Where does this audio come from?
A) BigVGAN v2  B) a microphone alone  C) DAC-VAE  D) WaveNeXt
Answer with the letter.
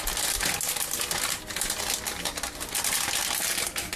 B